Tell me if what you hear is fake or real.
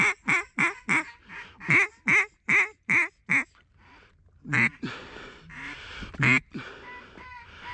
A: real